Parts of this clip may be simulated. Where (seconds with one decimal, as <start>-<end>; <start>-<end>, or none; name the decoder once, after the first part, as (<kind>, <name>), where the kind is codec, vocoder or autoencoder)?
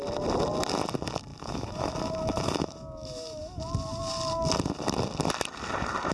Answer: 1.3-3.6 (autoencoder, DAC-VAE)